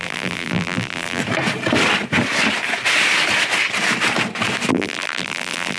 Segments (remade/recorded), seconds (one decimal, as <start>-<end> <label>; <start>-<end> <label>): 0.0-1.2 remade; 1.2-4.7 recorded; 4.7-5.8 remade